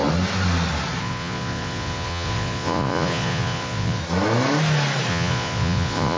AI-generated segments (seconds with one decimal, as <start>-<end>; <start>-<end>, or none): 1.0-4.0; 5.1-6.2